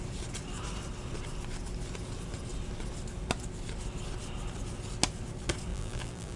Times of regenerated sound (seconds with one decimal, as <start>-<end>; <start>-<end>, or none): 5.7-6.4